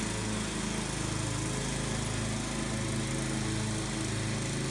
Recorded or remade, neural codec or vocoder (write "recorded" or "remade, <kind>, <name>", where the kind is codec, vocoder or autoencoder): recorded